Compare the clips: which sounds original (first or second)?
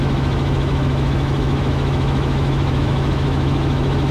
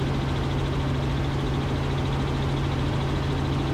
second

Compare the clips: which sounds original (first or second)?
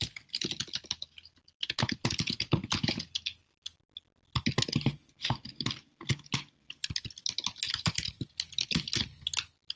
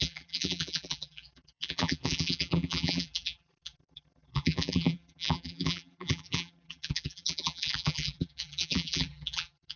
first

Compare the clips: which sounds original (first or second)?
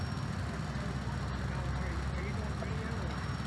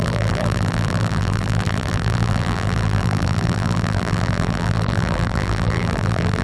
first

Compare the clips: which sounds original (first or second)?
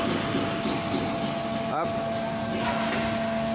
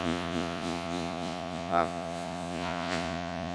first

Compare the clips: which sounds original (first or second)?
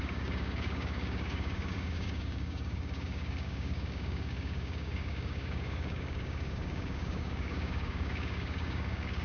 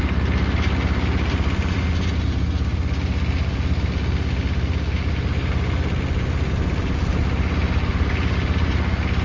second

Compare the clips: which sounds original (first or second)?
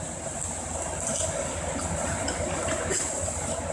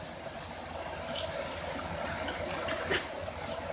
second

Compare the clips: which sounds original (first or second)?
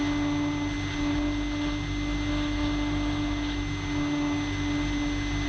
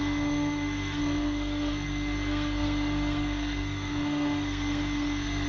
first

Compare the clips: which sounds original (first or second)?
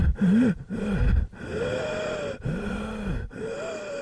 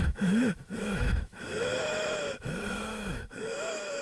first